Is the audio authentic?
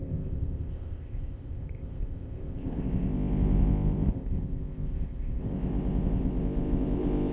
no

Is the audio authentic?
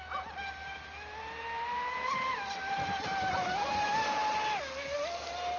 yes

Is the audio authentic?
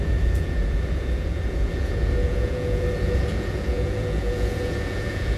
no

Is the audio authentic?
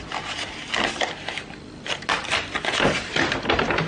yes